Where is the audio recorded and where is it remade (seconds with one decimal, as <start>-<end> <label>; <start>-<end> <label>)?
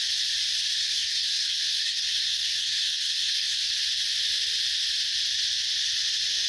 0.0-0.8 recorded; 0.8-3.7 remade; 3.7-6.5 recorded